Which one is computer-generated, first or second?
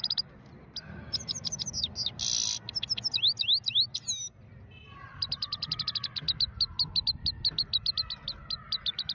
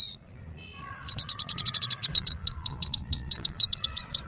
second